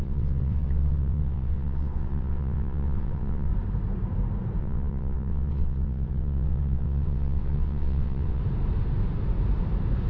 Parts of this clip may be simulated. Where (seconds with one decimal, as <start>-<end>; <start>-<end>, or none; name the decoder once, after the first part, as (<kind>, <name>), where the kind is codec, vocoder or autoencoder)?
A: 0.0-3.5 (vocoder, WaveNeXt); 4.6-8.4